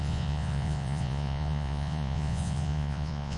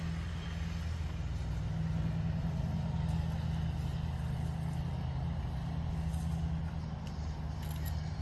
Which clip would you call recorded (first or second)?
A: second